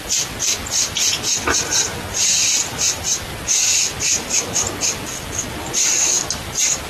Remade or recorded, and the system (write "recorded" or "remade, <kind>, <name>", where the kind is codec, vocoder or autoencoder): recorded